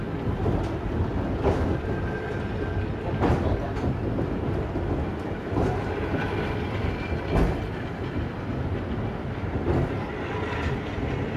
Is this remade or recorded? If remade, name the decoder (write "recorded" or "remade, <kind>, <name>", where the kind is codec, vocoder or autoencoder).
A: recorded